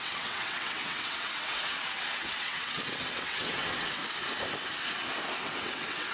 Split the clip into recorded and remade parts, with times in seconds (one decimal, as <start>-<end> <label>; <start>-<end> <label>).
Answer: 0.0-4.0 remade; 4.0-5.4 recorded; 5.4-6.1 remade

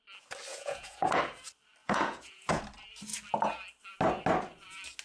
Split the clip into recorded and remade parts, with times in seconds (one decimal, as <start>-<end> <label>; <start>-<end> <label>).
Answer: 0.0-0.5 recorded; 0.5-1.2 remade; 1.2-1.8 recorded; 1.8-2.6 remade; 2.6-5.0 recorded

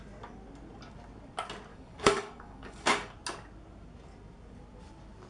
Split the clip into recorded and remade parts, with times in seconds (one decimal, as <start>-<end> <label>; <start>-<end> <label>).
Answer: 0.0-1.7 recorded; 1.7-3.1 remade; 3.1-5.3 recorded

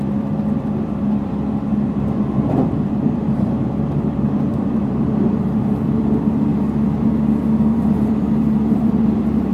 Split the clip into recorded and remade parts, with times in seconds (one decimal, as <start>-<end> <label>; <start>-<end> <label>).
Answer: 0.0-6.5 remade; 6.5-7.2 recorded; 7.2-9.5 remade

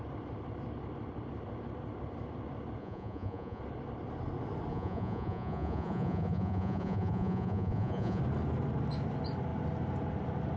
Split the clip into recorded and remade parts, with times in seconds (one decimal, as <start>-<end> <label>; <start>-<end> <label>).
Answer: 0.0-2.8 recorded; 2.8-3.6 remade; 3.6-4.7 recorded; 4.7-8.2 remade; 8.2-10.6 recorded

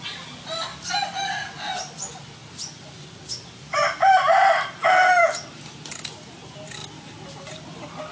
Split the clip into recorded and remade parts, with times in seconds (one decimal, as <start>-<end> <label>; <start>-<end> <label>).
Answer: 0.0-8.1 recorded

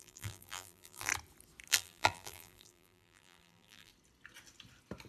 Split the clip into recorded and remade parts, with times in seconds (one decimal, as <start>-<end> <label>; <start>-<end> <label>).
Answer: 0.0-1.1 remade; 1.1-1.7 recorded; 1.7-3.9 remade; 3.9-5.1 recorded

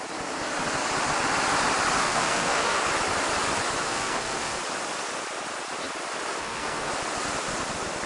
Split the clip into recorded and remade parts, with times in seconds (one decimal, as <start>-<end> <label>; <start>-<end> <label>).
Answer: 0.0-2.0 recorded; 2.0-2.8 remade; 2.8-3.8 recorded; 3.8-4.6 remade; 4.6-6.4 recorded; 6.4-6.9 remade; 6.9-8.1 recorded